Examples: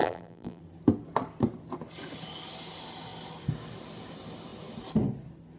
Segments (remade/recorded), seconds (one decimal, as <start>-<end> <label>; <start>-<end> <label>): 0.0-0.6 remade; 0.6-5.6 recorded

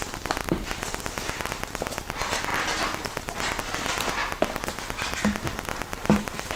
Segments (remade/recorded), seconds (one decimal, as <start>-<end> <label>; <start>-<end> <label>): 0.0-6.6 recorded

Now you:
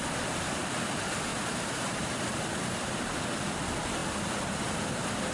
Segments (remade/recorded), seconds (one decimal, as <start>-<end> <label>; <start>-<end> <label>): 0.0-1.3 recorded; 1.3-2.2 remade; 2.2-5.3 recorded

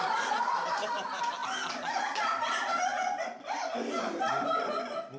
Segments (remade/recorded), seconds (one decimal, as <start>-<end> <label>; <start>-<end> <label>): 0.0-1.4 remade; 1.4-1.9 recorded; 1.9-2.9 remade; 2.9-4.0 recorded; 4.0-5.2 remade

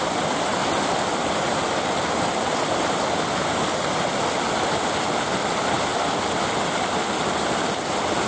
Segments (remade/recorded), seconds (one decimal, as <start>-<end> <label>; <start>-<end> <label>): 0.0-5.9 remade; 5.9-7.5 recorded; 7.5-8.3 remade

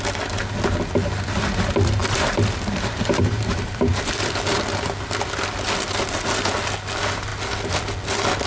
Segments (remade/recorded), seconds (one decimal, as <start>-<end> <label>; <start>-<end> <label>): 0.0-2.0 recorded; 2.0-3.9 remade; 3.9-8.5 recorded

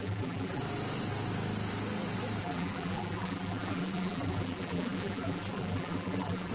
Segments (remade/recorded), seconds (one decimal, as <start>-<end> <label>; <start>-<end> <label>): 0.0-0.6 remade; 0.6-2.4 recorded; 2.4-6.5 remade